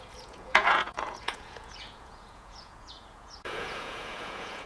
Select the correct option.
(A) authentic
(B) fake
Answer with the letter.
B